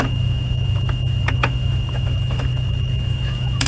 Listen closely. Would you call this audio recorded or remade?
remade